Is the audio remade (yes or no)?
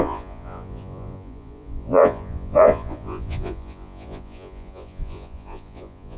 yes